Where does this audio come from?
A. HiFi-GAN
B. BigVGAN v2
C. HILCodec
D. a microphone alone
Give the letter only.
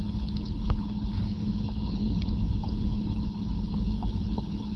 C